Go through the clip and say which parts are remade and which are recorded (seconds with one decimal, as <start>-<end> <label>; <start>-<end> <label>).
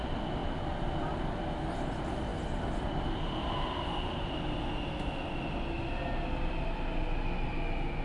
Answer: 0.0-8.0 recorded